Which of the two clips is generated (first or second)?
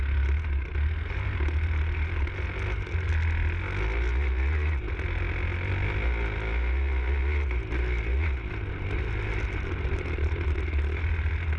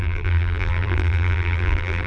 second